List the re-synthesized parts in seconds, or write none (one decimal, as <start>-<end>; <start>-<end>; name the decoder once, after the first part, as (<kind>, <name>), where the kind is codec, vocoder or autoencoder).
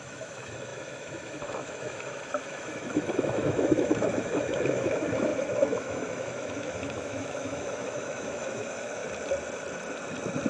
0.0-9.0 (autoencoder, DAC-VAE)